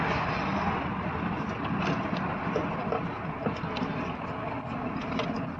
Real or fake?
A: real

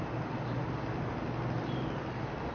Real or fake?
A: real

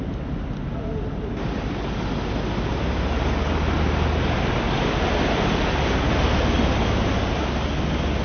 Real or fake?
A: real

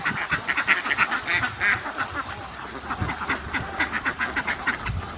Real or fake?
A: real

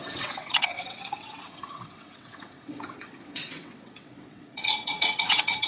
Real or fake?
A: fake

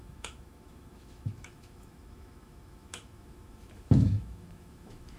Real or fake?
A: fake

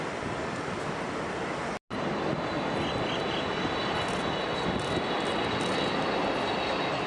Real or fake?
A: real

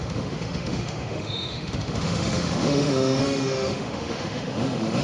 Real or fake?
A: fake